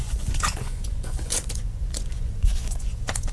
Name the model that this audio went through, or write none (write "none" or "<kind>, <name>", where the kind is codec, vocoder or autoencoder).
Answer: vocoder, Vocos